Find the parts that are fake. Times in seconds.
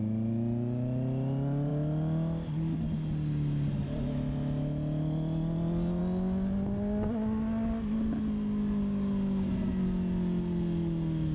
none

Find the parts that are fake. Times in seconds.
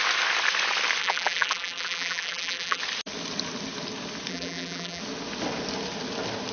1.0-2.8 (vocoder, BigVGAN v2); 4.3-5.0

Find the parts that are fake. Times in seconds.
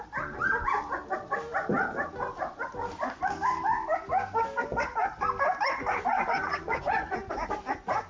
6.1-7.3 (vocoder, Vocos)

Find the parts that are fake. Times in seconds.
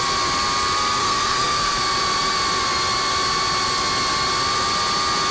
1.0-1.8 (codec, SNAC)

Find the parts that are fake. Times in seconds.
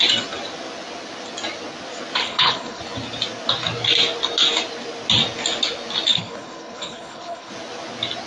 2.2-2.8 (codec, HILCodec); 6.1-7.5